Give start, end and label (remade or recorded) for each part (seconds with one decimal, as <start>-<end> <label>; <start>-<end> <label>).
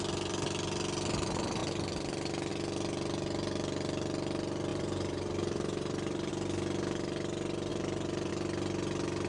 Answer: 0.0-4.7 recorded; 4.7-6.3 remade; 6.3-7.7 recorded; 7.7-8.3 remade; 8.3-9.3 recorded